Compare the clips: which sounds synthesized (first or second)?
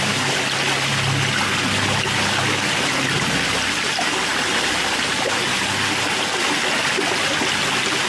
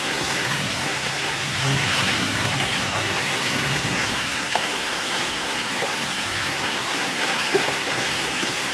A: second